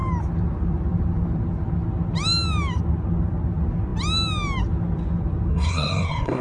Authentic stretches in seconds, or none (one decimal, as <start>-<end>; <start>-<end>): 0.0-5.5